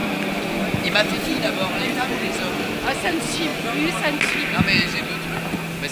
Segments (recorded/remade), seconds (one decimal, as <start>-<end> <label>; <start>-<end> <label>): 0.0-1.2 remade; 1.2-5.9 recorded